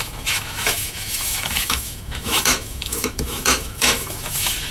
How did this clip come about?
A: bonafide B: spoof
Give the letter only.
B